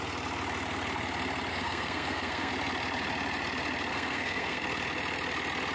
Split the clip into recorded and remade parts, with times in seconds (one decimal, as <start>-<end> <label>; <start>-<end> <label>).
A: 0.0-1.5 recorded; 1.5-2.5 remade; 2.5-3.9 recorded; 3.9-4.6 remade; 4.6-5.7 recorded